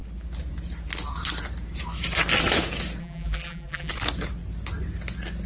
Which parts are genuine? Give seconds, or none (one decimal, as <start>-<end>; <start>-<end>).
0.0-3.0; 3.9-5.5